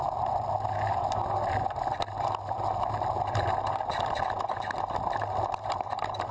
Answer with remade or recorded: recorded